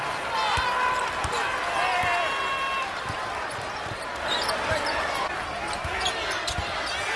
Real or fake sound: real